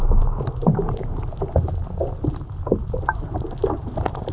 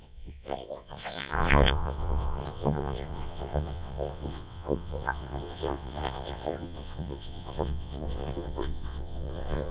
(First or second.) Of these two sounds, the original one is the first